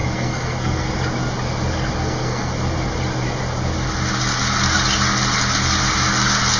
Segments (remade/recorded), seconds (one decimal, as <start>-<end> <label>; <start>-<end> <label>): 0.0-0.9 remade; 0.9-2.0 recorded; 2.0-2.5 remade; 2.5-6.6 recorded

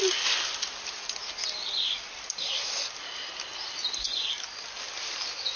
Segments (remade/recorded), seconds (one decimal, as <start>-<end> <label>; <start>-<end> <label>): 0.0-5.6 recorded

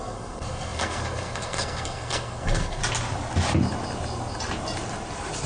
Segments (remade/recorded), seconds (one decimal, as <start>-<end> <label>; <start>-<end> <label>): 0.0-2.8 remade; 2.8-5.5 recorded

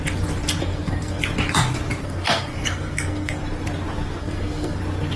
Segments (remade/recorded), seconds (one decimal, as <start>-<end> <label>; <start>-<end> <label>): 0.0-0.6 recorded; 0.6-1.2 remade; 1.2-2.0 recorded; 2.0-3.4 remade; 3.4-4.2 recorded; 4.2-4.8 remade; 4.8-5.2 recorded

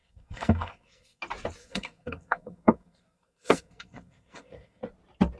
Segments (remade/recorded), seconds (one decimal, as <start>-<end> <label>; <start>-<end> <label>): 0.0-1.2 remade; 1.2-1.6 recorded; 1.6-4.8 remade; 4.8-5.4 recorded

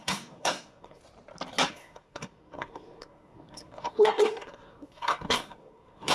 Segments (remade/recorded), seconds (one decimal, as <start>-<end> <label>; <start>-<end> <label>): 0.0-1.0 remade; 1.0-1.7 recorded; 1.7-6.1 remade

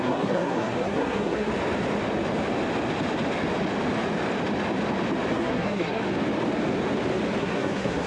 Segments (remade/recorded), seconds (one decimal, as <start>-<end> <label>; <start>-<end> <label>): 0.0-1.5 remade; 1.5-5.3 recorded; 5.3-6.0 remade; 6.0-7.4 recorded; 7.4-8.1 remade

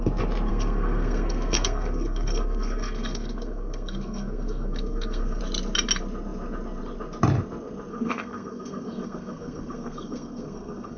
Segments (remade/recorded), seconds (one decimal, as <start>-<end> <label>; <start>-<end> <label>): 0.0-0.5 recorded; 0.5-5.4 remade; 5.4-7.9 recorded; 7.9-11.0 remade